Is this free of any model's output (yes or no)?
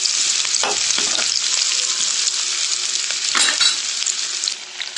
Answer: yes